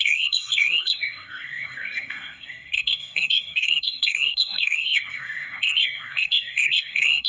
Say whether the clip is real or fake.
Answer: fake